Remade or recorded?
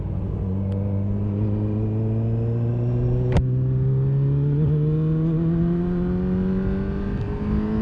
recorded